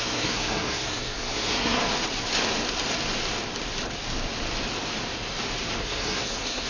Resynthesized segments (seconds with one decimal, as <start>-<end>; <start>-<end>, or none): 0.0-1.8; 5.8-6.7